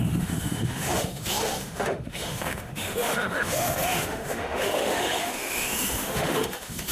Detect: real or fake fake